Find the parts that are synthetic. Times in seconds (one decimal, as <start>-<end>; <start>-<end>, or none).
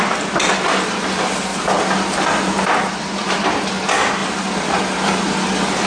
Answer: none